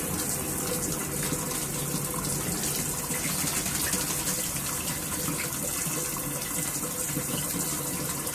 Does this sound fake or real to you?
real